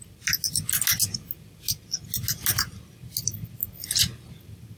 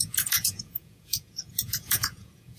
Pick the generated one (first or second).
second